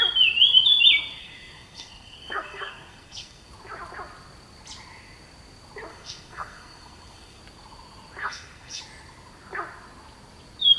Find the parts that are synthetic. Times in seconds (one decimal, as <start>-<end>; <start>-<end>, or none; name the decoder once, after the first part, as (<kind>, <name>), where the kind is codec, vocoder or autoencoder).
1.2-3.5 (codec, SNAC); 5.9-7.4; 8.2-8.8